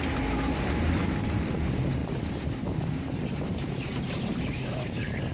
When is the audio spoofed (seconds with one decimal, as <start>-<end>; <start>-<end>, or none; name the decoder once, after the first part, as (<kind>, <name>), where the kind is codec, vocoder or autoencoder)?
2.0-5.3 (vocoder, BigVGAN v2)